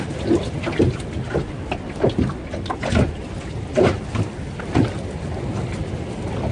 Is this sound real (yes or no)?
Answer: yes